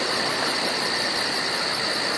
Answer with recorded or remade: recorded